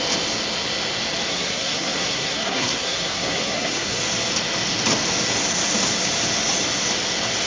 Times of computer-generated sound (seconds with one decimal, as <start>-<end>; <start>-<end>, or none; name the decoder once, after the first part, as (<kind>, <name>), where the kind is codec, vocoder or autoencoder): 1.3-4.0 (codec, SNAC)